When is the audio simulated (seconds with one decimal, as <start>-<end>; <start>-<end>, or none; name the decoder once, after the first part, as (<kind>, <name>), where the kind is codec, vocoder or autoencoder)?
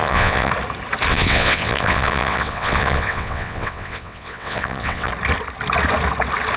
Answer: 0.0-0.5 (vocoder, WaveNeXt); 1.1-5.1